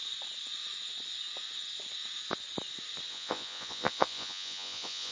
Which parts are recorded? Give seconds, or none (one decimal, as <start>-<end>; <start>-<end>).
0.0-3.1